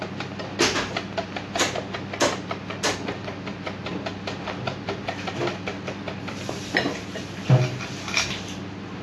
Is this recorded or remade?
recorded